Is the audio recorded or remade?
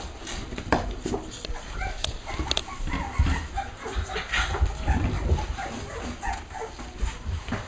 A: recorded